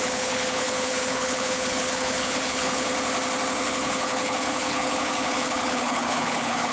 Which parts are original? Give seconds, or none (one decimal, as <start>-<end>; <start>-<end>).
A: 2.9-3.5

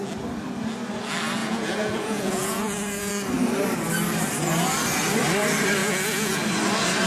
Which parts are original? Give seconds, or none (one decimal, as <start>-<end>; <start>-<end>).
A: 0.0-1.4; 3.1-5.8; 6.4-7.1